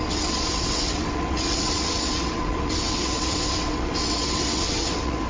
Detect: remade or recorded remade